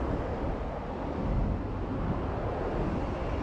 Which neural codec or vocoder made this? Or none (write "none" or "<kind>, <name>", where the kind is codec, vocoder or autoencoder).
none